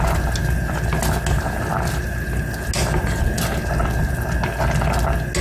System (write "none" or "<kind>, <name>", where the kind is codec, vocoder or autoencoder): none